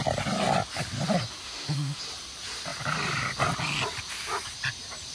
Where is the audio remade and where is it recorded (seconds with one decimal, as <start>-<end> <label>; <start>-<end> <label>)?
0.0-1.4 recorded; 1.4-2.0 remade; 2.0-5.1 recorded